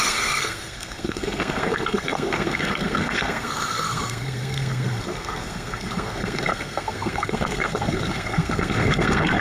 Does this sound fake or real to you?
fake